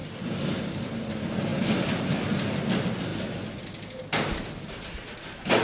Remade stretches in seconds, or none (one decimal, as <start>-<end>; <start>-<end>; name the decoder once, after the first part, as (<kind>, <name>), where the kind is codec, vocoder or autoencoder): none